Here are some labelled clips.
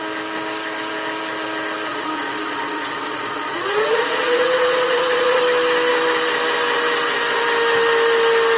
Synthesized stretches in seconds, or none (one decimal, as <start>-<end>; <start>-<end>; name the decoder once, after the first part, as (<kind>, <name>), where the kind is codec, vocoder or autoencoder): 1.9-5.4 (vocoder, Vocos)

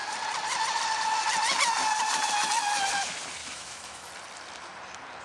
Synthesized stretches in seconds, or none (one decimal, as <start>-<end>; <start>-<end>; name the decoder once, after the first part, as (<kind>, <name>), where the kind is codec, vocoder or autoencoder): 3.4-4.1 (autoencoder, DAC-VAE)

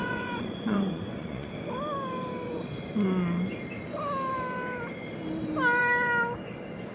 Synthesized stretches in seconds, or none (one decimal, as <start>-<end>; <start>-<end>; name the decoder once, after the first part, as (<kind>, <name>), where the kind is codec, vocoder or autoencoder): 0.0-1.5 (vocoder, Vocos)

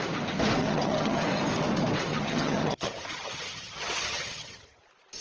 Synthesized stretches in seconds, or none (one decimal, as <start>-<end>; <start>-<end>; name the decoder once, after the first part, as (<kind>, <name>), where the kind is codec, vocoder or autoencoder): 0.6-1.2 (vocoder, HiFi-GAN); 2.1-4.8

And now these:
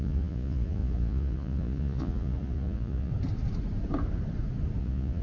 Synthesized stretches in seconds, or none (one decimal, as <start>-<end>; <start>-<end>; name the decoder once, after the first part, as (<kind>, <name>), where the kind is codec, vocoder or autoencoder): 0.0-3.1 (vocoder, Vocos); 4.8-5.2

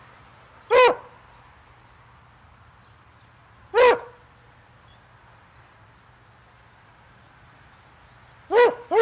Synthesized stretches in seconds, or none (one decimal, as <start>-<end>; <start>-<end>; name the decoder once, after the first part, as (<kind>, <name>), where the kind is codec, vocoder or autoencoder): none

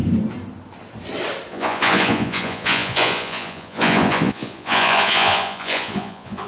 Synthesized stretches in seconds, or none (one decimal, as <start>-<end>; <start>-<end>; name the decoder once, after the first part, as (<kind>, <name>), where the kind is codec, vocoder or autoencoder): 1.5-6.5 (vocoder, Vocos)

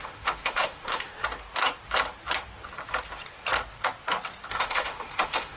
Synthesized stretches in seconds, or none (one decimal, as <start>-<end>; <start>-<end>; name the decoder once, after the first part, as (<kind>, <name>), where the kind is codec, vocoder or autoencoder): 0.0-1.1 (autoencoder, DAC-VAE); 4.5-5.6